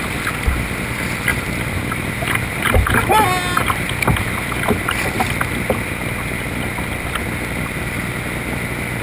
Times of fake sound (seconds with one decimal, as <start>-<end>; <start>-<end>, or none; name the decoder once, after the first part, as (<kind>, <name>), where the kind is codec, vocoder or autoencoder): none